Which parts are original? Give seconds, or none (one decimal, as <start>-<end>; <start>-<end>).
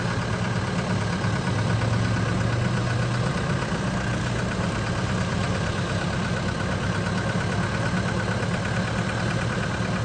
0.0-10.0